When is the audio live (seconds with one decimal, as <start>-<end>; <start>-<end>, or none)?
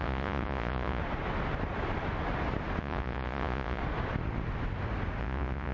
1.0-2.8; 3.8-5.2